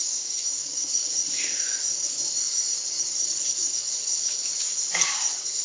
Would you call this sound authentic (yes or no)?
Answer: no